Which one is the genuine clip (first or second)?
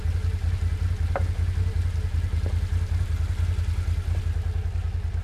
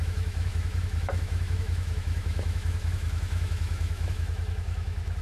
first